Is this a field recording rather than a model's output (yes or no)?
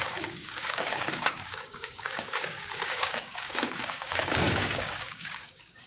no